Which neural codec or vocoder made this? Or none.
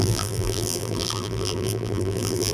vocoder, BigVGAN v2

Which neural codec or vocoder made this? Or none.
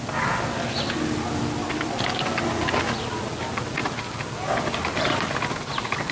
none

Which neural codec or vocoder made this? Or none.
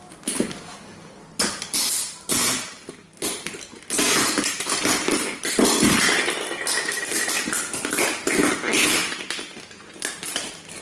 none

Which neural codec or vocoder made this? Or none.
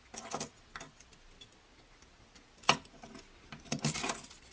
none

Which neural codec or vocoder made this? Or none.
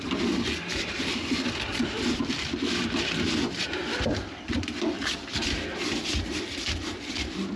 vocoder, BigVGAN v2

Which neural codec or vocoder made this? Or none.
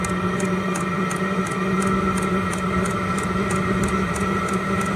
none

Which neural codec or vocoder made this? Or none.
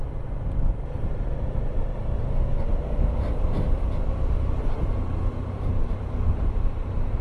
vocoder, BigVGAN v2